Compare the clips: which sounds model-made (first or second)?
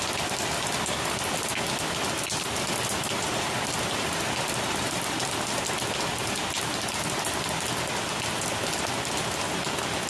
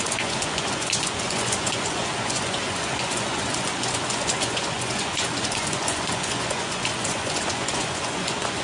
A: second